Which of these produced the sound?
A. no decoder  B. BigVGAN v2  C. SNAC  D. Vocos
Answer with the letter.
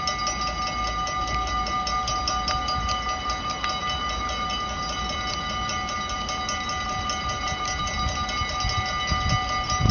A